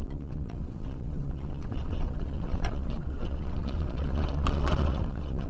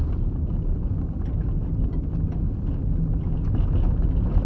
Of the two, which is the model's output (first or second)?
first